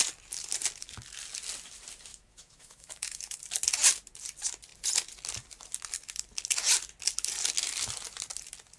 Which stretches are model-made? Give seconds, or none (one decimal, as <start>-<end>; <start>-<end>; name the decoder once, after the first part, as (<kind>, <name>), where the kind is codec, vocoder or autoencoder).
2.1-3.4 (autoencoder, DAC-VAE)